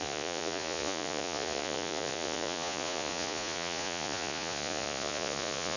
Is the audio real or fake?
fake